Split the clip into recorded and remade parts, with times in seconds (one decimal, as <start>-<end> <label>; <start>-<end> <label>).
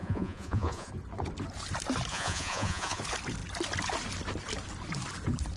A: 0.0-0.9 remade; 0.9-2.1 recorded; 2.1-3.0 remade; 3.0-5.6 recorded